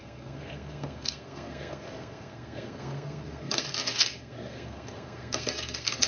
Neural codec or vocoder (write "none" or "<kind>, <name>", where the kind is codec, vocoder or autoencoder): codec, SNAC